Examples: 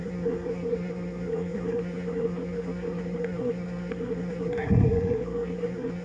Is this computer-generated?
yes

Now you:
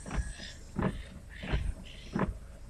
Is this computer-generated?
no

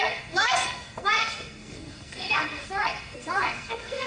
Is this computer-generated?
yes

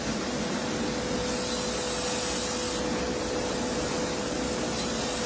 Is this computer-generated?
no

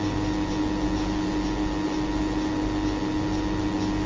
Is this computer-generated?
no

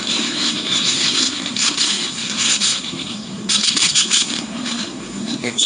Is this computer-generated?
yes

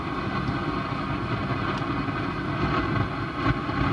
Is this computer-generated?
no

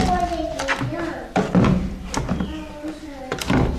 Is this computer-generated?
no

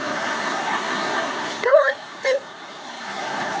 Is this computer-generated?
yes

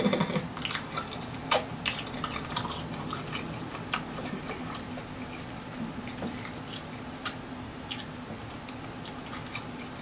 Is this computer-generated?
no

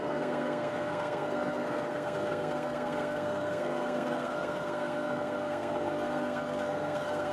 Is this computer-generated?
yes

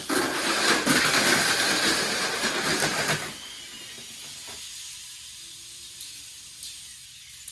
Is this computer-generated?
no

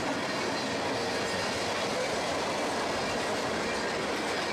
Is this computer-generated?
no